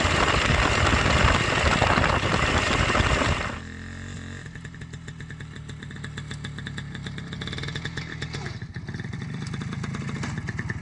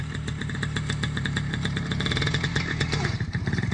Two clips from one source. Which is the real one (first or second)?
first